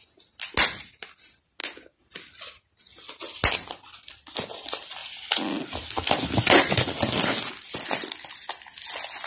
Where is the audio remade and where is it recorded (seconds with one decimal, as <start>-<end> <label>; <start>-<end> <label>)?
0.0-9.3 recorded